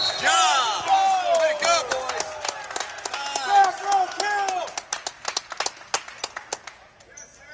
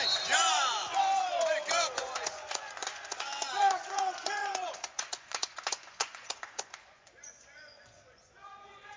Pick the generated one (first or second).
second